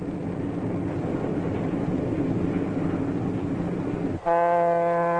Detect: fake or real real